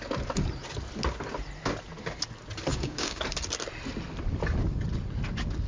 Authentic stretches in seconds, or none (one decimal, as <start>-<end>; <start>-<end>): 0.0-2.7; 3.2-5.7